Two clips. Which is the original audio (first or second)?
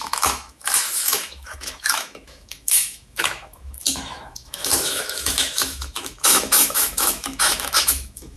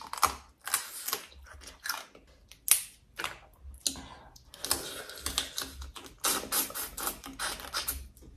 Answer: second